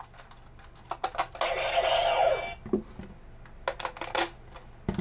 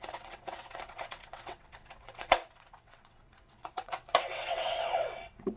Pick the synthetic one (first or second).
second